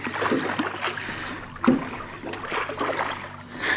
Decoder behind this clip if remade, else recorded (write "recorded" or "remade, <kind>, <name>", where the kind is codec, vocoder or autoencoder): recorded